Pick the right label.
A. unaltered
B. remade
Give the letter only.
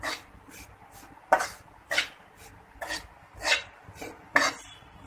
B